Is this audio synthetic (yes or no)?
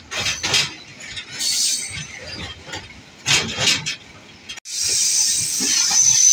no